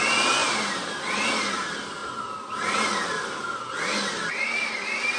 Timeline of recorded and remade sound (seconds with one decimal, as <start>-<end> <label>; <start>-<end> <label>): 0.0-5.2 recorded